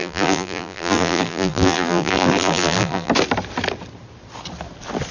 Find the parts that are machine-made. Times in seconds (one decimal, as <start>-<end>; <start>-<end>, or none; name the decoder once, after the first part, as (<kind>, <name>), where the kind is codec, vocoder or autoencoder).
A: 0.0-3.1 (vocoder, BigVGAN v2)